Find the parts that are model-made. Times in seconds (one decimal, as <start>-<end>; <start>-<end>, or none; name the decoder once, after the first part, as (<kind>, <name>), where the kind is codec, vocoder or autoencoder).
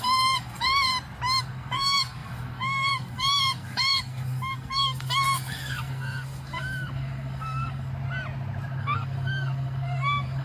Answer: 0.0-0.9 (codec, SNAC); 1.4-7.9; 8.8-10.4